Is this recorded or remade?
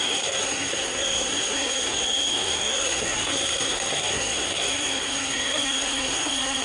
remade